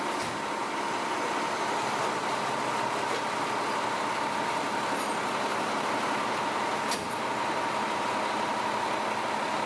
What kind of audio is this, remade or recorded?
recorded